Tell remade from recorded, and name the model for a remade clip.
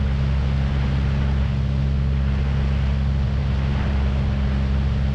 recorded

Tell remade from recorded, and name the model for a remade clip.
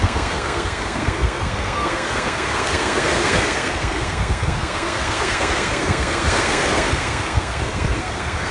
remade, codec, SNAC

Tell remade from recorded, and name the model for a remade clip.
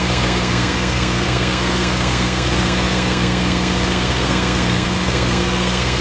remade, codec, SNAC